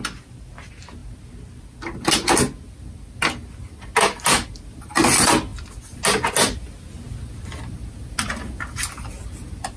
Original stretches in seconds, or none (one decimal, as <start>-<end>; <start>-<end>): 0.0-9.8